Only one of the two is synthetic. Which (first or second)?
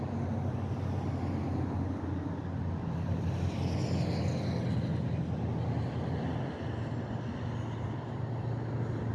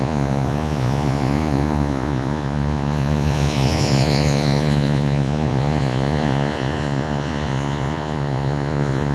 second